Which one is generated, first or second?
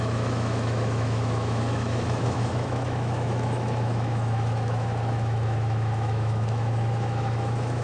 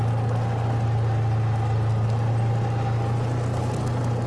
first